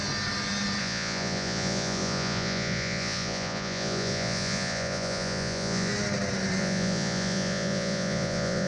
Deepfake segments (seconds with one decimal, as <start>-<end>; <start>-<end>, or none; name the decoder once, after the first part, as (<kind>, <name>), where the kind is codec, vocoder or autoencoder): 0.8-5.9 (vocoder, Vocos); 6.6-8.7